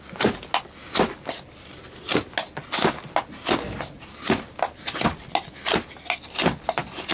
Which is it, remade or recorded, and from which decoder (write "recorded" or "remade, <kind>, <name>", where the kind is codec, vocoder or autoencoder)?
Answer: recorded